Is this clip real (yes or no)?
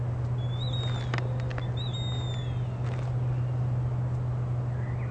yes